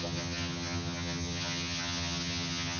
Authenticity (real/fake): fake